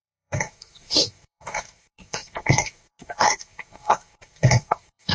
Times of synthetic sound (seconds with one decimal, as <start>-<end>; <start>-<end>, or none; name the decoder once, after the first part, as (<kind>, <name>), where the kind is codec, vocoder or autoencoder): 0.0-5.1 (codec, SNAC)